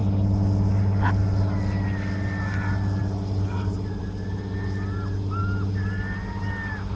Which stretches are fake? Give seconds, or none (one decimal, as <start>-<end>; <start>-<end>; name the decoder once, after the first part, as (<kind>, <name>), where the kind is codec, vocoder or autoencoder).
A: none